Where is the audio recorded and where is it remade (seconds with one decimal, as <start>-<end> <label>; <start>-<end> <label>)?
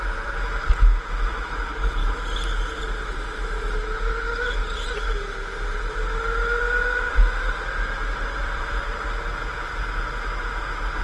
0.0-8.4 recorded; 8.4-9.0 remade; 9.0-11.0 recorded